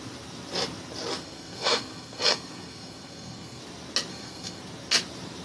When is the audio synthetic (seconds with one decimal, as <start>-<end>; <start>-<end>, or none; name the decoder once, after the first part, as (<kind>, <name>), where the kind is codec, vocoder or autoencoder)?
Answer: 1.2-3.6 (codec, SNAC); 4.1-4.6

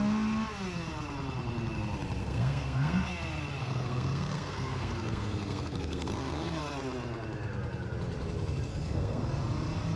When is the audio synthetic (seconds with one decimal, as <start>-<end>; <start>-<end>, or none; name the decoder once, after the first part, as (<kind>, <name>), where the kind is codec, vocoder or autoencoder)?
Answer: 2.2-3.1 (codec, SNAC); 3.6-6.6; 8.7-9.3